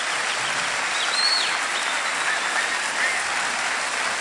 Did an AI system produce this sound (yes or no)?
no